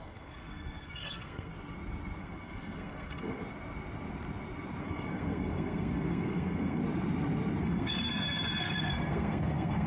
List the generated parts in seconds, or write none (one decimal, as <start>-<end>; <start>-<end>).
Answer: 0.0-1.5; 2.2-3.4; 4.8-6.8; 7.6-8.1; 8.6-9.9